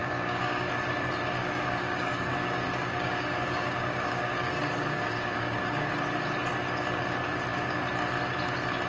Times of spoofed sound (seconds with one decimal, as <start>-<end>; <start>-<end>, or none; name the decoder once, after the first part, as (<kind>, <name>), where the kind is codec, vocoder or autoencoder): 0.0-0.7 (codec, DAC); 1.4-5.9